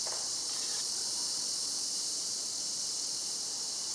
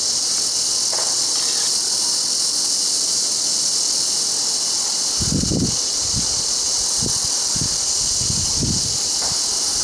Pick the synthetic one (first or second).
first